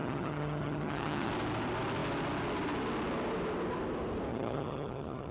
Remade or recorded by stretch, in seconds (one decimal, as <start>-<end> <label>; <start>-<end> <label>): 0.0-1.3 remade; 1.3-4.3 recorded; 4.3-5.3 remade